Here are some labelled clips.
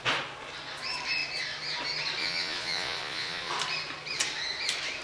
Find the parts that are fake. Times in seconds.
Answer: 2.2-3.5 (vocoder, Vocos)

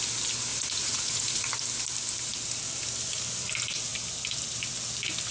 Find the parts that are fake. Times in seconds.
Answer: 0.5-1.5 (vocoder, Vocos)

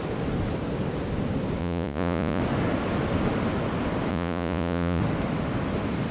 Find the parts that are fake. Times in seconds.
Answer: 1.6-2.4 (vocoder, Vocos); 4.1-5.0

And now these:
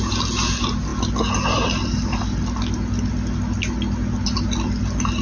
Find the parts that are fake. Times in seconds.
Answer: none